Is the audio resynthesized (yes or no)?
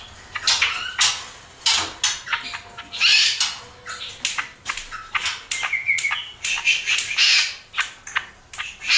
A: no